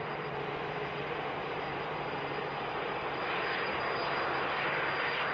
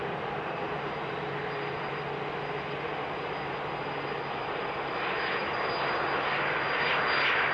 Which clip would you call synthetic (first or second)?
first